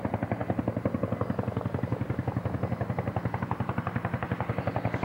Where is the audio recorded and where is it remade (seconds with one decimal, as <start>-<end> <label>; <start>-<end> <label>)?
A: 0.0-5.0 recorded